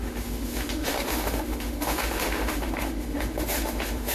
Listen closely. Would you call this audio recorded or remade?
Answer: remade